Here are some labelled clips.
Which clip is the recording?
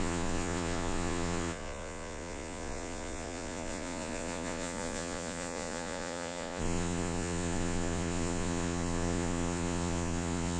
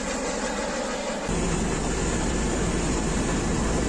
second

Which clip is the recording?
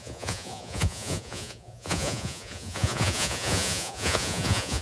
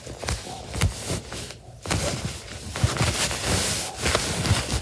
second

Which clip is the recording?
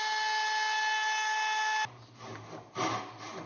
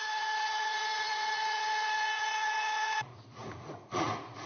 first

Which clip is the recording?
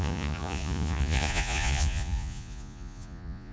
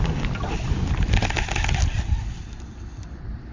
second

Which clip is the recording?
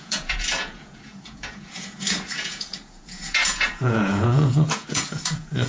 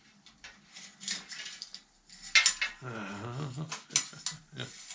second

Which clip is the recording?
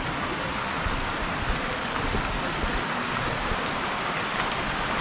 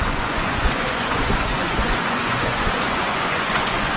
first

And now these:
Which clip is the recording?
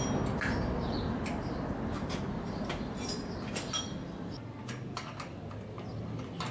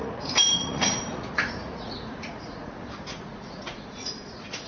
first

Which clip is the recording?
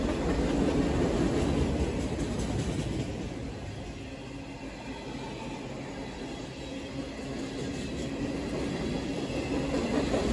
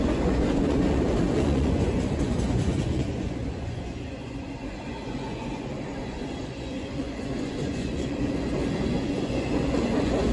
first